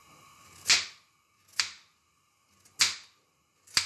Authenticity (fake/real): real